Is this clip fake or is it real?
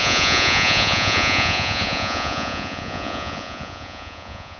fake